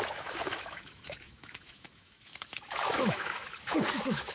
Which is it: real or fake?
fake